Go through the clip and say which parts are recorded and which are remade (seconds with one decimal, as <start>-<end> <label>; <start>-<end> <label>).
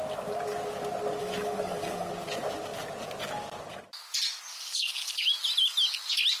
0.0-1.2 recorded; 1.2-2.1 remade; 2.1-4.5 recorded; 4.5-5.3 remade; 5.3-6.4 recorded